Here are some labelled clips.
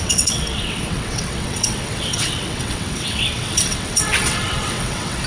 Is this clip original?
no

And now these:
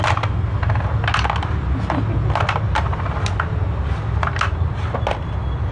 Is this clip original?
yes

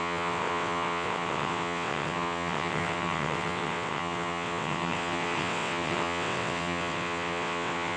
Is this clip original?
no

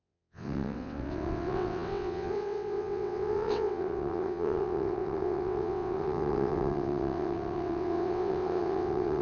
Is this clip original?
no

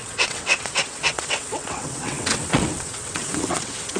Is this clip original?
no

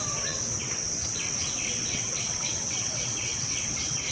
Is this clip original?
no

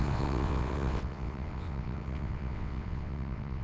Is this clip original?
no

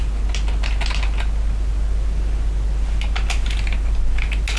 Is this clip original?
yes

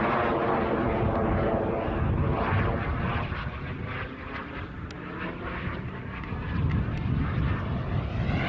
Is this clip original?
yes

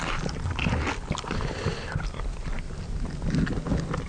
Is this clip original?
yes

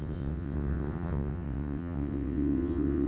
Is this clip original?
no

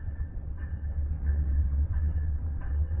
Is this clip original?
no